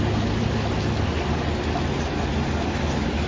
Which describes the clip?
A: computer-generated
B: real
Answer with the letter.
B